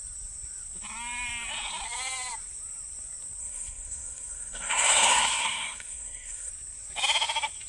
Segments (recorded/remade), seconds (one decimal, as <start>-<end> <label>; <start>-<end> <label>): 0.0-3.4 recorded; 3.4-6.5 remade; 6.5-7.7 recorded